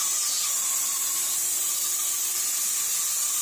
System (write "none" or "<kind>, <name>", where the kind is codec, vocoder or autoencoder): none